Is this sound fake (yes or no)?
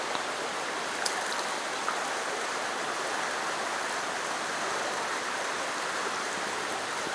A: no